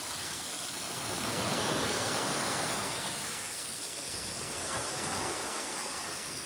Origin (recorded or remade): remade